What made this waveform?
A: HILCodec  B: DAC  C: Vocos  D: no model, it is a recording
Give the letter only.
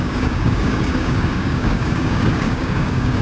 B